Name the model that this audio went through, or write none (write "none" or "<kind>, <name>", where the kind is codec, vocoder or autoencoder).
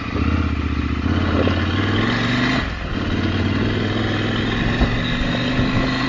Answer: none